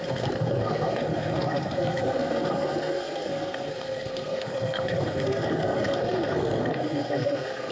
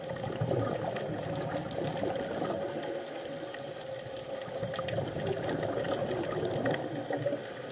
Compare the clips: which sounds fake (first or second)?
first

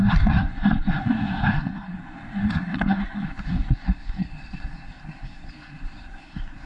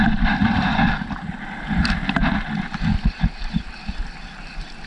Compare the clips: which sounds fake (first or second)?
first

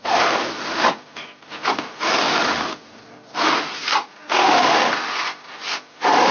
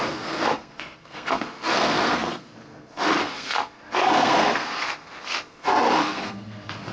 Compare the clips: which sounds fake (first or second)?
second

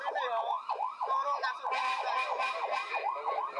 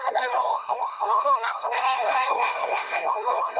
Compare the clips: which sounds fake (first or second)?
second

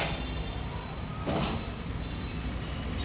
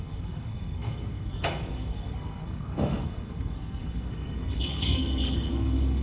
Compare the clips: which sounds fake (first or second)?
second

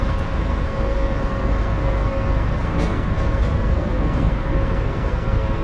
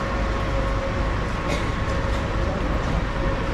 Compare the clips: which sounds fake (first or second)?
first